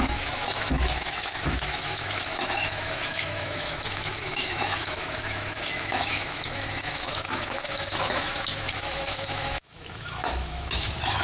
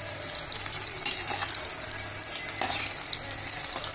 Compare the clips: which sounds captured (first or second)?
second